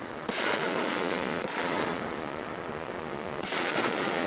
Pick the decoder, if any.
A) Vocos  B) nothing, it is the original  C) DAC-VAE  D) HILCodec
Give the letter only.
A